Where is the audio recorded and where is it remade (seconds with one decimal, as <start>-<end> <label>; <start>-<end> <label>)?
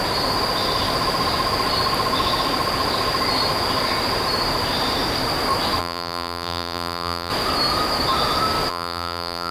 0.0-5.8 recorded; 5.8-7.3 remade; 7.3-8.7 recorded; 8.7-9.5 remade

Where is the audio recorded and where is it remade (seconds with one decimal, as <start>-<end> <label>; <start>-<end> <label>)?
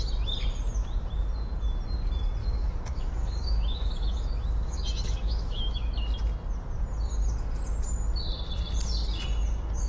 0.0-2.4 recorded; 2.4-5.9 remade; 5.9-9.9 recorded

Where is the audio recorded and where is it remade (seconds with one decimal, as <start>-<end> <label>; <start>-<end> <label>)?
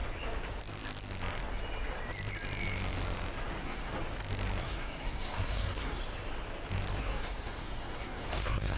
0.0-3.6 recorded; 3.6-4.0 remade; 4.0-4.6 recorded; 4.6-6.0 remade; 6.0-7.0 recorded; 7.0-8.8 remade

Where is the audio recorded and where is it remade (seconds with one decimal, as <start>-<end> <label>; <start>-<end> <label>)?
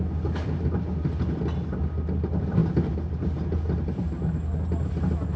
0.0-5.4 recorded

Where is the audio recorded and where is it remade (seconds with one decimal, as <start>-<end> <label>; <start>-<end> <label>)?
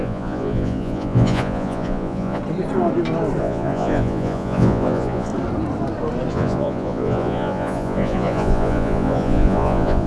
0.0-2.4 remade; 2.4-3.4 recorded; 3.4-5.3 remade; 5.3-6.3 recorded; 6.3-10.1 remade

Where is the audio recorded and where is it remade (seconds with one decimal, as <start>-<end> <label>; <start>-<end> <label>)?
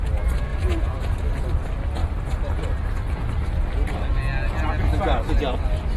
0.0-0.5 recorded; 0.5-1.4 remade; 1.4-6.0 recorded